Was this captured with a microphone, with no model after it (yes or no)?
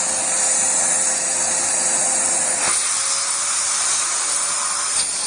yes